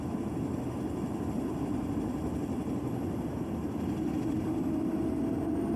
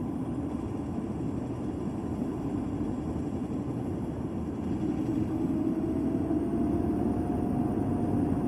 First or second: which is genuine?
second